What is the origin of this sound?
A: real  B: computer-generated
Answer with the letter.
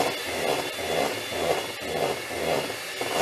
A